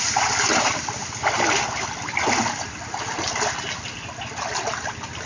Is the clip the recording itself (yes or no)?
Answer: yes